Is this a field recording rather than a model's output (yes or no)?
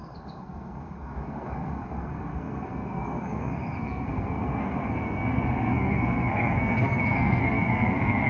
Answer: no